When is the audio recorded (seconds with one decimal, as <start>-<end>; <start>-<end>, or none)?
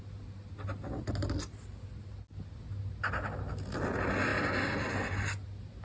0.0-5.8